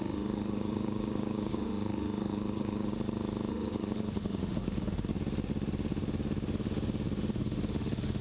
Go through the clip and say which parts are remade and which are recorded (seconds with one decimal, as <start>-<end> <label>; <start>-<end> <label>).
0.0-2.9 remade; 2.9-3.5 recorded; 3.5-5.1 remade; 5.1-7.3 recorded; 7.3-8.2 remade